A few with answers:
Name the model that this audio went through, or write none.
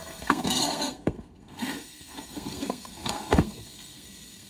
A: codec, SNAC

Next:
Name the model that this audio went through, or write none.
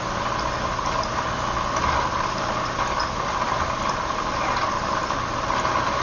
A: none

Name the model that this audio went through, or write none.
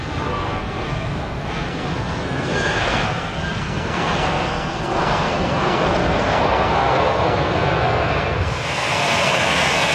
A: codec, SNAC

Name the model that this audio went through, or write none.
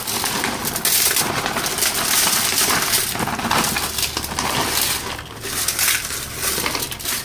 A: none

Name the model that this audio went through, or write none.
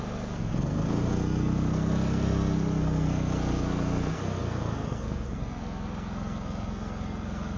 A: codec, SNAC